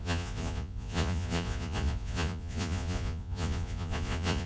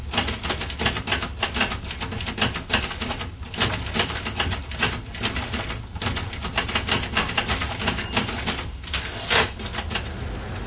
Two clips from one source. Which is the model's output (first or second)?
first